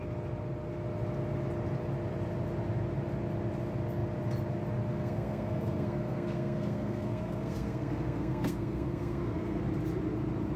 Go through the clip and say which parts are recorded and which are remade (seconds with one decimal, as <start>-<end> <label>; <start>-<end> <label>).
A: 0.0-4.9 recorded; 4.9-9.6 remade; 9.6-10.6 recorded